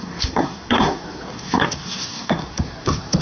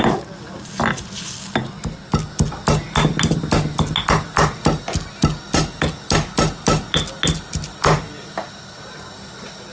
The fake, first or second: first